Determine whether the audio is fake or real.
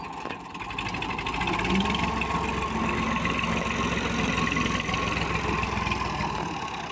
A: real